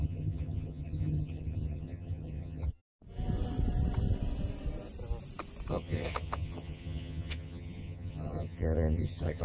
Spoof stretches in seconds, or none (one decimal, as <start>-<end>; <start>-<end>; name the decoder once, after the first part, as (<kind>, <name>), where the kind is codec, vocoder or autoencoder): 0.0-2.8 (vocoder, HiFi-GAN); 5.7-9.4